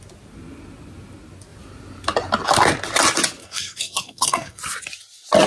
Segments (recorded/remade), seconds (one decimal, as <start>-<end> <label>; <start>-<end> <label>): 0.0-3.4 recorded; 3.4-4.6 remade; 4.6-5.5 recorded